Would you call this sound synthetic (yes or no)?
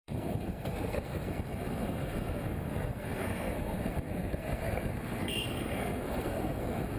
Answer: yes